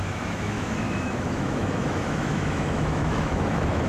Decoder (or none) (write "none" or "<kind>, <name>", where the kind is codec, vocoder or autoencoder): autoencoder, DAC-VAE